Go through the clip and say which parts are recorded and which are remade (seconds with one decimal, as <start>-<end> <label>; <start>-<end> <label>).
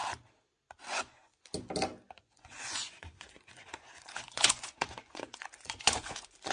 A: 0.0-0.9 recorded; 0.9-1.3 remade; 1.3-2.2 recorded; 2.2-6.5 remade